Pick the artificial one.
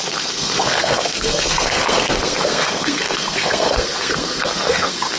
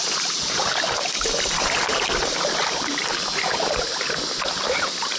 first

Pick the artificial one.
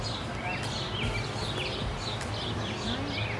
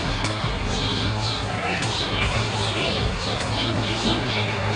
second